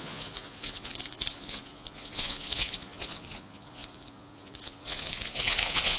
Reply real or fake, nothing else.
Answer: fake